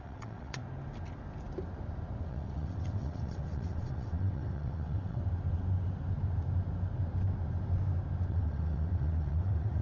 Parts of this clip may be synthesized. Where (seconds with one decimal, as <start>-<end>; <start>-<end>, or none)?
0.0-0.6; 2.2-5.2; 8.3-9.8